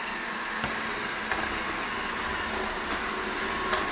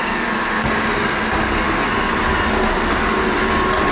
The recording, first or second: second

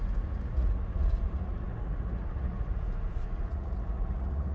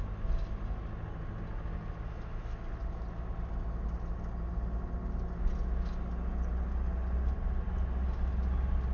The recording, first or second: second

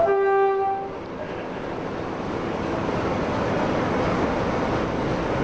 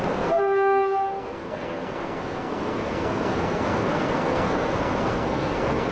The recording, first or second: first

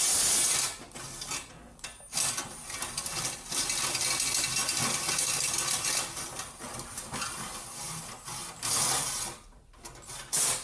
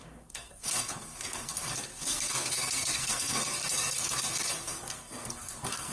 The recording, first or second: first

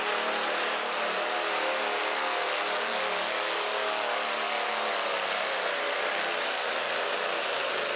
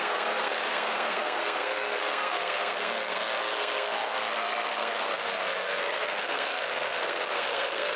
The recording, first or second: first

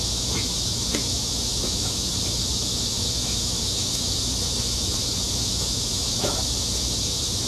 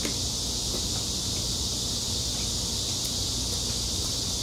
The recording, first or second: second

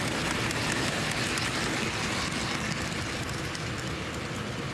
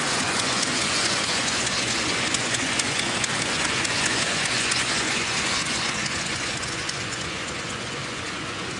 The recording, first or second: first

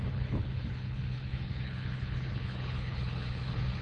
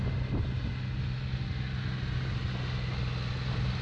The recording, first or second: second